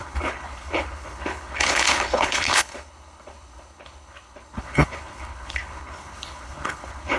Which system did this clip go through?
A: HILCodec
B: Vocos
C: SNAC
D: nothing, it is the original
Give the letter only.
A